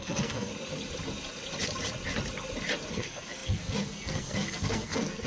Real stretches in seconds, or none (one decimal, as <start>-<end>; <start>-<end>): 0.5-2.9